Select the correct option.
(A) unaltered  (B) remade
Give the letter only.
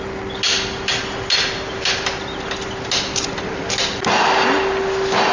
A